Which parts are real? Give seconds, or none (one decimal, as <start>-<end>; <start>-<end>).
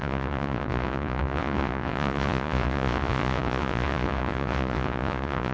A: none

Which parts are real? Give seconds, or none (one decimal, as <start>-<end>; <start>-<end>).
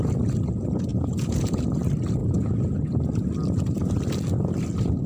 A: 0.0-0.9; 1.6-2.2; 2.8-5.1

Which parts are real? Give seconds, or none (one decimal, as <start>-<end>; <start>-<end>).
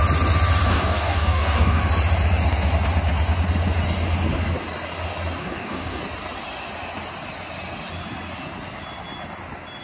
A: 0.0-0.7; 1.8-5.4; 6.0-9.8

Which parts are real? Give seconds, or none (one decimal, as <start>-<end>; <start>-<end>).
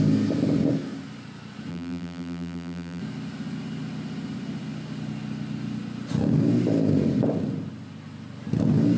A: 0.0-1.7; 3.0-9.0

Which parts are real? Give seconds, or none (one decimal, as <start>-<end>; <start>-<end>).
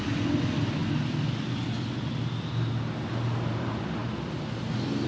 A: 0.0-5.1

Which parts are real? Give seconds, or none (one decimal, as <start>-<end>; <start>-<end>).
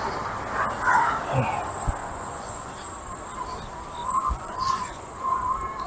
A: 0.0-2.0; 2.7-4.0; 5.5-5.9